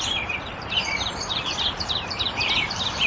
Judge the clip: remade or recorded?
remade